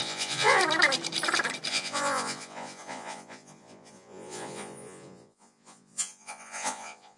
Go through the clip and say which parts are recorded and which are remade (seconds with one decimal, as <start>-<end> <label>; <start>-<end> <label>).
0.0-0.6 remade; 0.6-1.7 recorded; 1.7-7.2 remade